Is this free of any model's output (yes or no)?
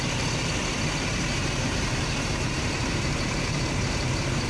no